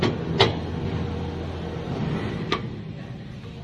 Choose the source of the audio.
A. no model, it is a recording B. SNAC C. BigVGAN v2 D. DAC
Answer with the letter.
A